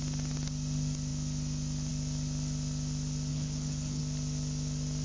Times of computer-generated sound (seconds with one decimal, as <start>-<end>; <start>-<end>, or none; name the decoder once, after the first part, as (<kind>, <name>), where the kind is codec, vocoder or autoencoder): 3.3-4.0 (codec, HILCodec)